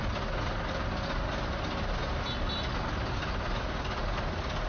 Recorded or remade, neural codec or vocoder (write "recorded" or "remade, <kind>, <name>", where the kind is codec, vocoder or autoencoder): recorded